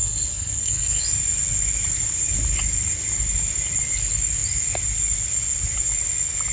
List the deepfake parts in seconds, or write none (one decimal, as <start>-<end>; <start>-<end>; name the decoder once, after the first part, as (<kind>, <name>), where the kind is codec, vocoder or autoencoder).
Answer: 0.0-1.0 (codec, SNAC)